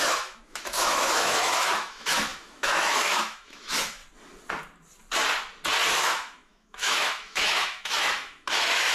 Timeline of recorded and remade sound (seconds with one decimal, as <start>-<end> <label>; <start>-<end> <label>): 0.0-4.0 remade; 4.0-5.9 recorded; 5.9-8.9 remade